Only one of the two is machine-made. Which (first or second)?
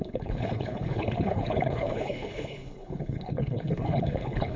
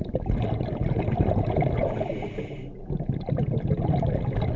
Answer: first